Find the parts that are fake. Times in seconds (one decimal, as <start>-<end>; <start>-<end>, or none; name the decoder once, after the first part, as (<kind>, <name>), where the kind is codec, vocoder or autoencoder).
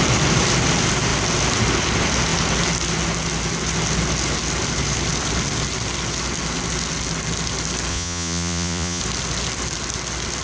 7.9-9.0 (vocoder, Vocos)